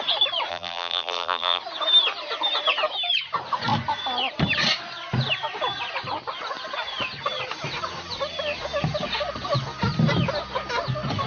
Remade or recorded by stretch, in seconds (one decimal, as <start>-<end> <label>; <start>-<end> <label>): 0.0-0.5 recorded; 0.5-1.6 remade; 1.6-11.3 recorded